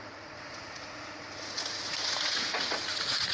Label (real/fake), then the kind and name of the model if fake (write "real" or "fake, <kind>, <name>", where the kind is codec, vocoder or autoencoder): fake, vocoder, Vocos